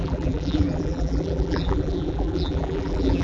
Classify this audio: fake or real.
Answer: fake